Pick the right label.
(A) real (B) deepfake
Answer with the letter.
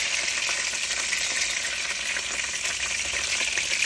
A